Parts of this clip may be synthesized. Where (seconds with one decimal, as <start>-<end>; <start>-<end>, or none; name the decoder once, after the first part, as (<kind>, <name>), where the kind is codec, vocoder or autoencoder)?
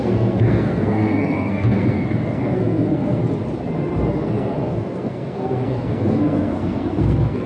0.0-3.2 (codec, SNAC); 4.1-7.5